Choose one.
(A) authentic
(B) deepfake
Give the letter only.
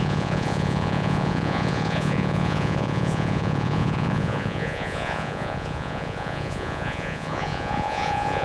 B